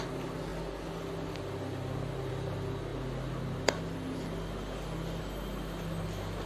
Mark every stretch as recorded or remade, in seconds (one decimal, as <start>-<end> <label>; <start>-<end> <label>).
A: 0.0-6.5 recorded